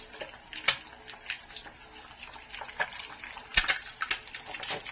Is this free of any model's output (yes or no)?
yes